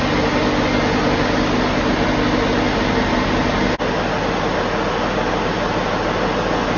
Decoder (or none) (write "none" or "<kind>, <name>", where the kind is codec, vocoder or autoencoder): none